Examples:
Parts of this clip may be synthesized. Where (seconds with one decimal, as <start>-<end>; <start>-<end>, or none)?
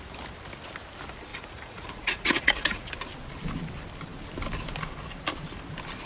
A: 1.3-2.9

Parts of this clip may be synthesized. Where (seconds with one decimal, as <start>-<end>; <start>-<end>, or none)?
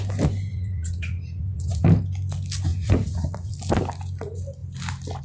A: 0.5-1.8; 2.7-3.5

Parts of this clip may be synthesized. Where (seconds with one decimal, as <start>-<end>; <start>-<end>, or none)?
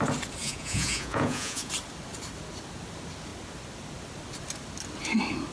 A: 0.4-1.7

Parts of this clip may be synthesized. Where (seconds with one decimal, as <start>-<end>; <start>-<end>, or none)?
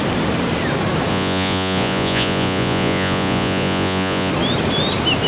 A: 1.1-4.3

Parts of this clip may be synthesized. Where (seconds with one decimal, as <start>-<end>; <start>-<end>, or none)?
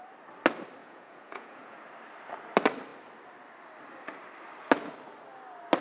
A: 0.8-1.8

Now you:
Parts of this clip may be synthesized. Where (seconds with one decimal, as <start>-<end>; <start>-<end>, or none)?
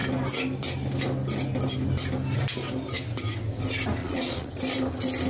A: 4.0-4.5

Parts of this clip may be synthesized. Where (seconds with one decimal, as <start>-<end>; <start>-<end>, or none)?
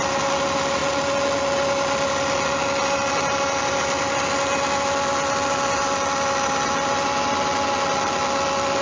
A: none